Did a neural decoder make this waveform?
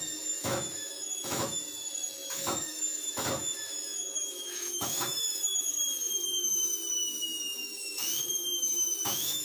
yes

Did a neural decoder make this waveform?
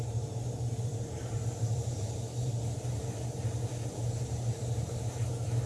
yes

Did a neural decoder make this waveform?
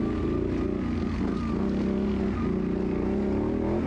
no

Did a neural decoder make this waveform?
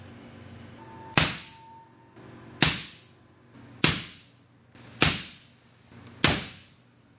no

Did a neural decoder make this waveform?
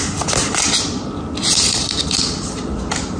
no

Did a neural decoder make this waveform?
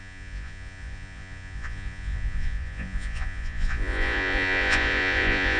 yes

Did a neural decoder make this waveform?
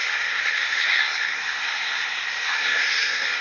yes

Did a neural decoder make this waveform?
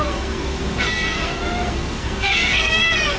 yes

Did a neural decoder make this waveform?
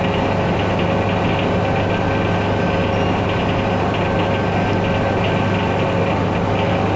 no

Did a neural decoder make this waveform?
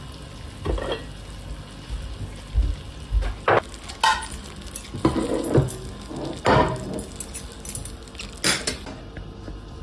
no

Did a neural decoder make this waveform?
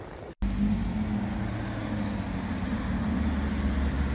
no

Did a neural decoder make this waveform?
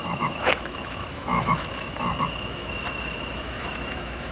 yes